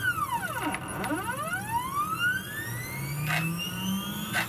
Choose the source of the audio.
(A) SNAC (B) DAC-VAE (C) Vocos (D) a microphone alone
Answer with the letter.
D